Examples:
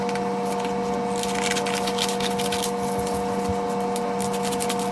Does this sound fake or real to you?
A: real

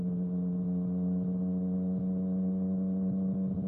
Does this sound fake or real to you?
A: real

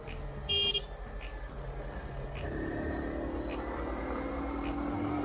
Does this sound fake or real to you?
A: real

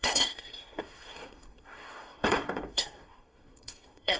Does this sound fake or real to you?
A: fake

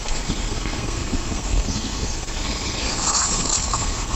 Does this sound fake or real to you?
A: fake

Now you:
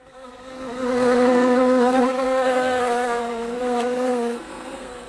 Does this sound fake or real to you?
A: fake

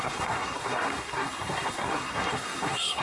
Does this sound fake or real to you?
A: fake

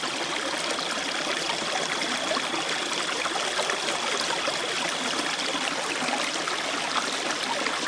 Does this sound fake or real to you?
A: real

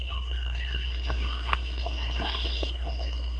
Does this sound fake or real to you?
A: fake